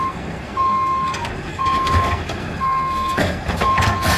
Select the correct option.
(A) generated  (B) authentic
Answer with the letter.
A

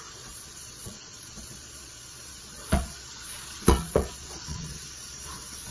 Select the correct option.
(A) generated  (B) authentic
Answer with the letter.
A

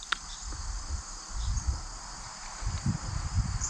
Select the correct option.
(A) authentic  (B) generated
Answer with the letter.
A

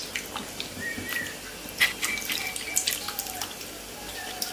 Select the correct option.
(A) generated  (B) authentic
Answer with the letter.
B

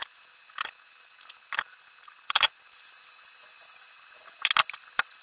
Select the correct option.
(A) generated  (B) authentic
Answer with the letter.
B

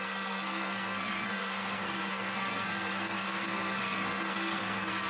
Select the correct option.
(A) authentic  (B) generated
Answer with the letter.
B